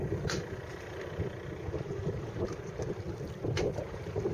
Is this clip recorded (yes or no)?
yes